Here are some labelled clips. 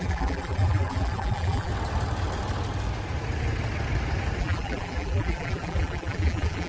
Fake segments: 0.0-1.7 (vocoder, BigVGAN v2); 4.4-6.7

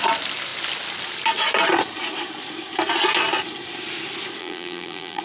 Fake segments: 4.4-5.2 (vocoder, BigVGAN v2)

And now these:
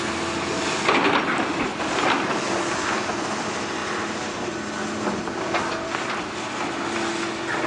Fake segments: none